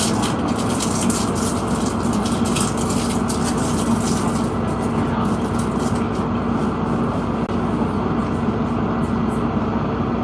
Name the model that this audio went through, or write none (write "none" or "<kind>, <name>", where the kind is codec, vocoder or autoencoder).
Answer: none